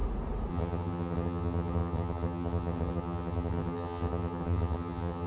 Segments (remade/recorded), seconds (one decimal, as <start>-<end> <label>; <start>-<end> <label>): 0.0-0.5 recorded; 0.5-5.3 remade